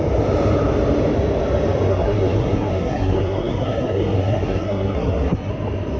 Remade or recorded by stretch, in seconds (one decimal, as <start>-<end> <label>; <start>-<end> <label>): 0.0-1.9 recorded; 1.9-5.5 remade; 5.5-6.0 recorded